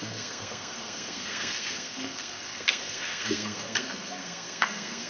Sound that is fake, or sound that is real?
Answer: fake